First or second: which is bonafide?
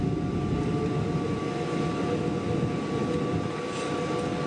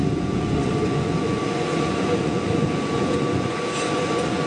first